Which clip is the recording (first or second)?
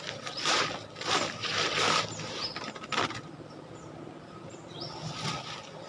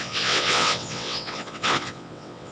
first